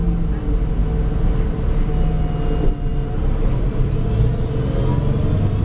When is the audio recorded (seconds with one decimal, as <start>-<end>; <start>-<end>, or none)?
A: 0.0-5.6